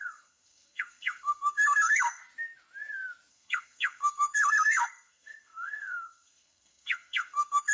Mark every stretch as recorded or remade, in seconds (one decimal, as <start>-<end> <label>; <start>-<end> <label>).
0.0-2.2 remade; 2.2-3.3 recorded; 3.3-7.7 remade